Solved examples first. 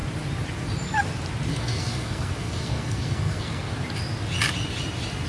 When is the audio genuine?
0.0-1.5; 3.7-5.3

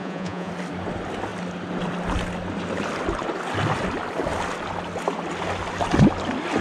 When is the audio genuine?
0.5-6.6

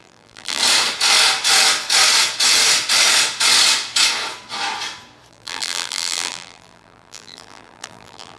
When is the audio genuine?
0.6-5.3

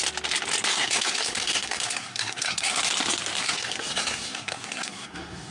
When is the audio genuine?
0.0-0.7; 2.8-3.4

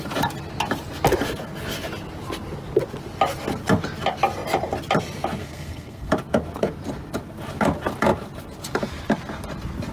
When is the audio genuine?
0.0-5.4; 6.1-9.9

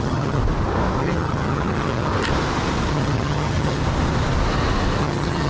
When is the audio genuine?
0.4-1.0; 2.1-2.9; 3.8-5.0

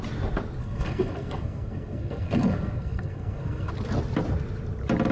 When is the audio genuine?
0.0-0.6; 3.7-5.1

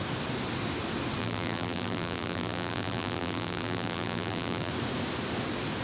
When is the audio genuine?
0.0-1.2; 4.7-5.8